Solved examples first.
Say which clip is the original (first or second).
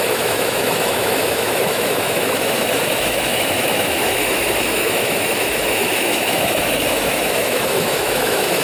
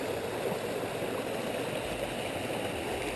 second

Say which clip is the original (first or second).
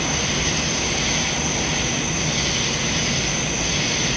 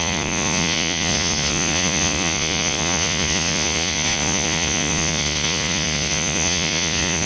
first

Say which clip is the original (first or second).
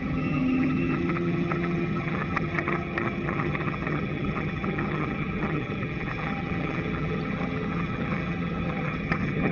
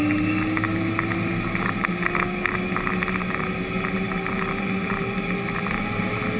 second